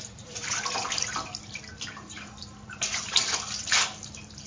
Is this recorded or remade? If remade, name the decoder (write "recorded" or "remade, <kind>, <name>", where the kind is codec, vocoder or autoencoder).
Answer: remade, vocoder, BigVGAN v2